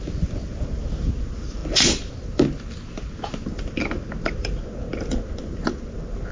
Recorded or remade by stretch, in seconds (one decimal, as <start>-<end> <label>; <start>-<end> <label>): 0.0-6.3 recorded